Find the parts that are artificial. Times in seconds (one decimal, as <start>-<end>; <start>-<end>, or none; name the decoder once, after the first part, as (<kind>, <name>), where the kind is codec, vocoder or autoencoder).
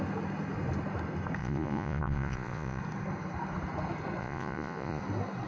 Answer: 1.4-2.8 (vocoder, Vocos); 4.2-5.0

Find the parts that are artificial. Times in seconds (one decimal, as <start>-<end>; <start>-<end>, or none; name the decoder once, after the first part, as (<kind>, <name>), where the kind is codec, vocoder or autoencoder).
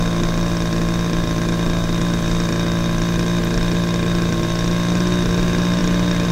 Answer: none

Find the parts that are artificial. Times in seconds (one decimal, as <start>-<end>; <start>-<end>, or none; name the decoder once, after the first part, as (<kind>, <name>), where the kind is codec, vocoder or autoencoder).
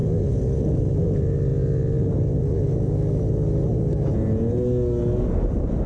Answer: none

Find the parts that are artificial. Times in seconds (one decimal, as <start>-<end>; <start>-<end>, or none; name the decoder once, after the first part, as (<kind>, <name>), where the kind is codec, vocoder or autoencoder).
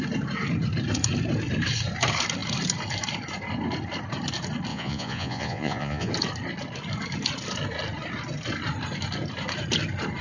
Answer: 4.7-6.1 (vocoder, Vocos)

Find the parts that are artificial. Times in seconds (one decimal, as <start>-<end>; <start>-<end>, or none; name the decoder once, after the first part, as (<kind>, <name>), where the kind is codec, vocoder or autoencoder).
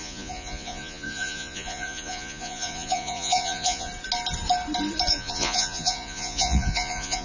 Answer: 0.0-3.9 (vocoder, Vocos); 5.1-7.2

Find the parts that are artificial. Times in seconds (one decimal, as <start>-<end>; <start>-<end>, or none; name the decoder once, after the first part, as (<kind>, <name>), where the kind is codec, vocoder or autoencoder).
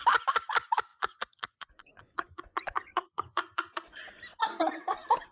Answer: 0.9-4.1 (vocoder, Vocos)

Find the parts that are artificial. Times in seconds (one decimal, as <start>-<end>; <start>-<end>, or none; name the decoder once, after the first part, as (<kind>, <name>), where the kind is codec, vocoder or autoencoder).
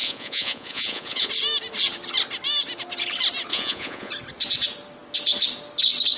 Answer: 0.0-1.3 (vocoder, Vocos); 3.5-4.1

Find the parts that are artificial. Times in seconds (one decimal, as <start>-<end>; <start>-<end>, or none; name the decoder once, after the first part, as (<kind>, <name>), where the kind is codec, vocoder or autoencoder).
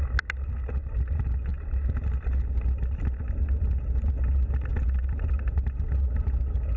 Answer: none